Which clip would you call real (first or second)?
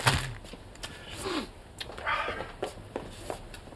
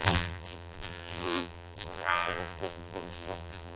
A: first